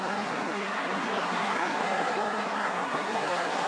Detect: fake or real fake